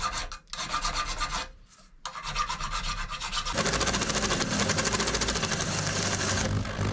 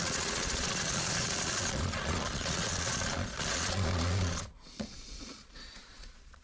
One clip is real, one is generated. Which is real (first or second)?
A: first